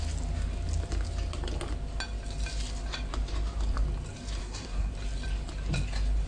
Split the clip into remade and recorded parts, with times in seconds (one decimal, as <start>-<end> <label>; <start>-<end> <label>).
0.0-4.4 recorded; 4.4-4.9 remade; 4.9-6.3 recorded